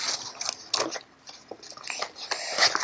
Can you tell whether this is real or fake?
real